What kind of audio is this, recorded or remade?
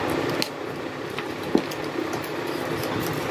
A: recorded